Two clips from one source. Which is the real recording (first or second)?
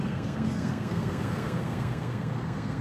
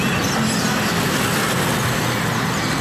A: second